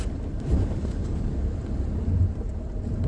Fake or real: real